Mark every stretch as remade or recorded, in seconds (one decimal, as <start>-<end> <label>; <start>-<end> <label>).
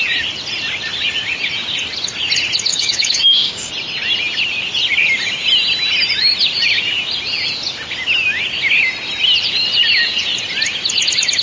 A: 0.0-2.7 recorded; 2.7-3.7 remade; 3.7-11.4 recorded